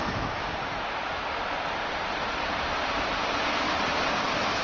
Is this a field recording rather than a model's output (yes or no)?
no